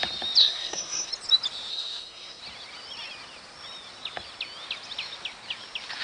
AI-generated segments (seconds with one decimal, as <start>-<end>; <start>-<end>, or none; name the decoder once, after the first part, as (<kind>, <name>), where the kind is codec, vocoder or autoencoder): 0.4-1.1 (codec, SNAC); 1.7-2.4